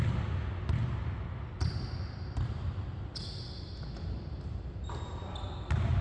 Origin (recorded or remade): recorded